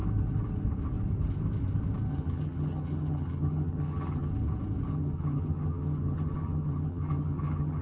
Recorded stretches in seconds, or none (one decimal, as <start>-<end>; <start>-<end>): 0.0-2.1; 4.3-4.9